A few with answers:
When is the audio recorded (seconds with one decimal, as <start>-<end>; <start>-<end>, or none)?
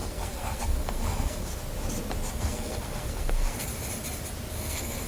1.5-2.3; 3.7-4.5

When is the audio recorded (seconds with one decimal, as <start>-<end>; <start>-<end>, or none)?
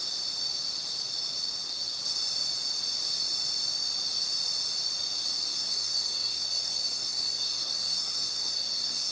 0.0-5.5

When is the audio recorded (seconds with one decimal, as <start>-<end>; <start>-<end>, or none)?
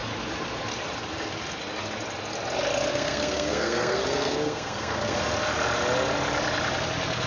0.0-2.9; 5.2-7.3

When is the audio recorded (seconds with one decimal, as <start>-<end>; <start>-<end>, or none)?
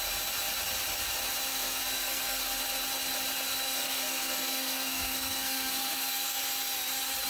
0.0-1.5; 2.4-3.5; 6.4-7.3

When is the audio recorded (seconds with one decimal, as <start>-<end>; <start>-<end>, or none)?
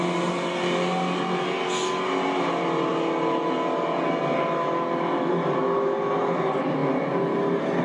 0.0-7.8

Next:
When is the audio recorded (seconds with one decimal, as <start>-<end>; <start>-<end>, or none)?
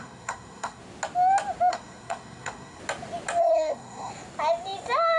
0.8-1.7; 2.8-3.4; 4.1-5.2